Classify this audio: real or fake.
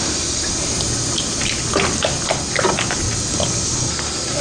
real